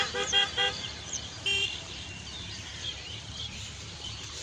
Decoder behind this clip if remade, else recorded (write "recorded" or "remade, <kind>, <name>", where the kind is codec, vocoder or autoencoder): remade, vocoder, BigVGAN v2